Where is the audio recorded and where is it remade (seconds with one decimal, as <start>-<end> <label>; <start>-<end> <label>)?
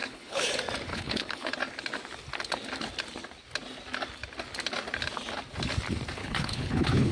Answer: 0.0-0.5 remade; 0.5-0.9 recorded; 0.9-1.5 remade; 1.5-6.2 recorded; 6.2-7.1 remade